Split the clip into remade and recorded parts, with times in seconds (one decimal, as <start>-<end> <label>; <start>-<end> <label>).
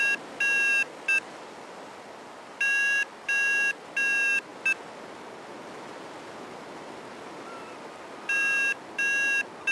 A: 0.0-9.7 recorded